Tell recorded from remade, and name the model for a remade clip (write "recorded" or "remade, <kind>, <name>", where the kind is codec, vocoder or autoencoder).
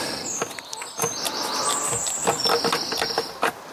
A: recorded